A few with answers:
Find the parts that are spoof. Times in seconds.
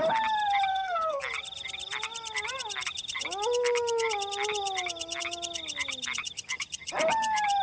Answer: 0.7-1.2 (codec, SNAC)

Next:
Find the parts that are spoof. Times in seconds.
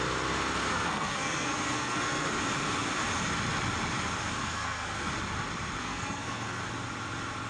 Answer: 0.7-2.4 (codec, SNAC); 4.4-5.1; 5.8-6.6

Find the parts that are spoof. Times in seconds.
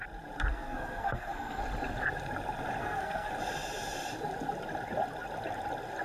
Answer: 0.5-1.6 (codec, SNAC); 2.8-3.3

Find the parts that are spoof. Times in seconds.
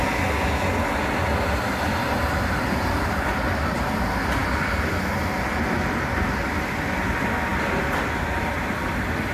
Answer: none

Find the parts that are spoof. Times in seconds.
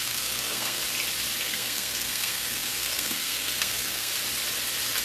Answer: 0.0-0.8 (codec, SNAC); 1.4-4.1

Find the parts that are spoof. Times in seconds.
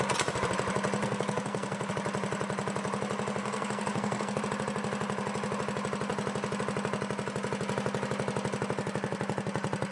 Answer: 1.0-1.9 (codec, SNAC); 3.4-4.4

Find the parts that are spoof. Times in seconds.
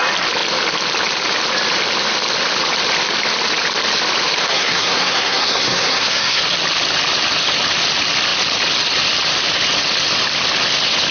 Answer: 4.4-6.4 (codec, SNAC)